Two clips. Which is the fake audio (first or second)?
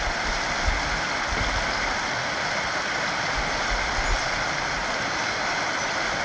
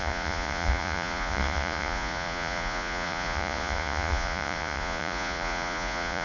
second